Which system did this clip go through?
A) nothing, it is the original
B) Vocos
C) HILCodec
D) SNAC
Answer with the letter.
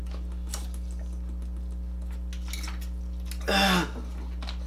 A